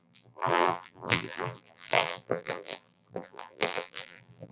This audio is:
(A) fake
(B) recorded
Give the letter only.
A